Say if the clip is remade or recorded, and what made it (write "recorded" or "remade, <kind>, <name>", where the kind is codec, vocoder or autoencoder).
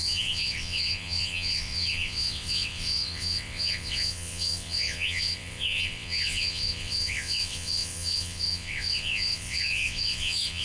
remade, vocoder, WaveNeXt